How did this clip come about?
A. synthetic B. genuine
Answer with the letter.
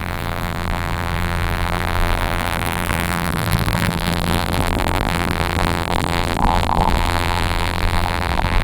A